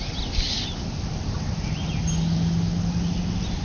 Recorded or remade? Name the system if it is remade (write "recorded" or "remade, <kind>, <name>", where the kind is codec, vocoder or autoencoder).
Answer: recorded